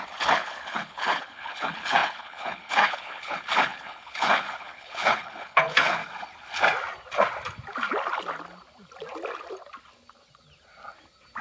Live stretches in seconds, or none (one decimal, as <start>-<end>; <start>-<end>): 6.0-11.4